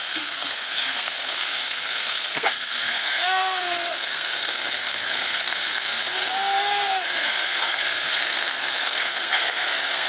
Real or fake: fake